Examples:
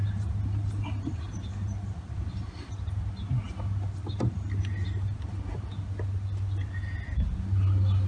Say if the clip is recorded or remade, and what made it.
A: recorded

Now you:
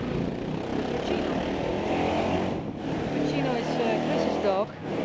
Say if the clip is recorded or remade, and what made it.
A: recorded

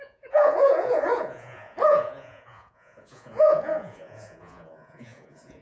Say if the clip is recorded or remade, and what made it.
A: remade, vocoder, Vocos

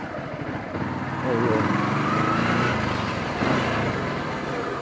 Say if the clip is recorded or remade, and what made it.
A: recorded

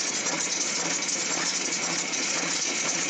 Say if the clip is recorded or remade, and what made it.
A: remade, vocoder, Vocos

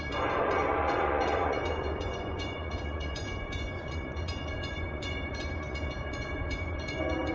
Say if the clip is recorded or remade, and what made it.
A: remade, vocoder, Vocos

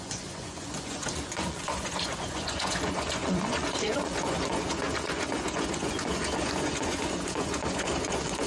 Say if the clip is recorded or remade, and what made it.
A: remade, vocoder, Vocos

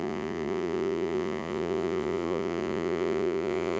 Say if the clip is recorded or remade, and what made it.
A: remade, vocoder, Vocos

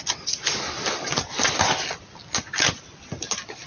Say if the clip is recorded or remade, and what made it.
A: recorded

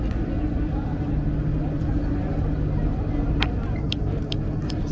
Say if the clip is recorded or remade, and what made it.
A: recorded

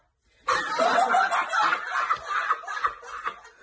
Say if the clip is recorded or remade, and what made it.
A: recorded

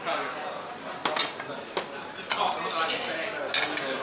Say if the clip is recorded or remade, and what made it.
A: recorded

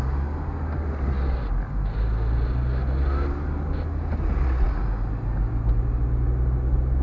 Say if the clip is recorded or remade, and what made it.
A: recorded